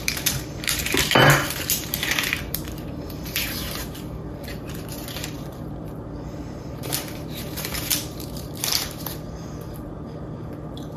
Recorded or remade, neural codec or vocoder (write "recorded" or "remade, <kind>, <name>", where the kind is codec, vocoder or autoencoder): remade, vocoder, BigVGAN v2